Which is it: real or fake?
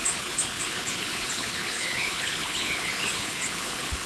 fake